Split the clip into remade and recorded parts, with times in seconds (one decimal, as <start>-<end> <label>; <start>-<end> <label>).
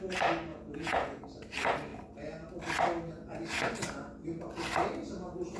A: 0.0-0.5 recorded; 0.5-1.2 remade; 1.2-5.6 recorded